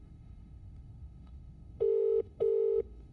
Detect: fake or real fake